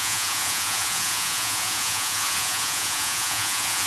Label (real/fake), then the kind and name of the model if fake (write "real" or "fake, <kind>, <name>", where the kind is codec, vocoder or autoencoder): fake, vocoder, Vocos